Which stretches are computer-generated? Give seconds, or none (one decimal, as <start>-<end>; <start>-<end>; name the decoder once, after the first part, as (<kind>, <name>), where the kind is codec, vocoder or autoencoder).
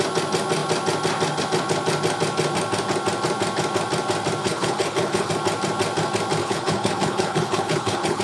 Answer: 4.4-5.3 (codec, HILCodec); 6.4-8.2